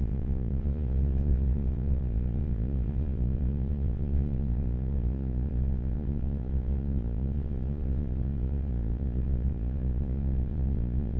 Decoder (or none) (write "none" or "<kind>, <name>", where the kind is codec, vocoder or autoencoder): vocoder, Vocos